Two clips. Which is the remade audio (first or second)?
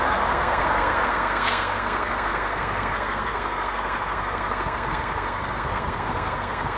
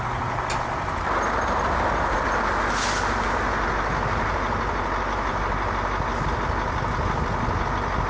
first